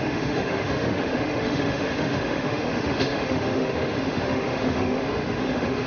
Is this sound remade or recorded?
remade